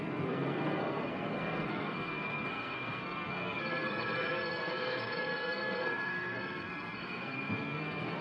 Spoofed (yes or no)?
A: yes